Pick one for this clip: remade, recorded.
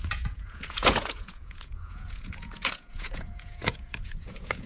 remade